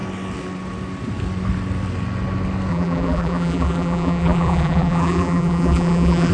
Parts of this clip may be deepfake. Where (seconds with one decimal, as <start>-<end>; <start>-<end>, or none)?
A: 2.7-6.3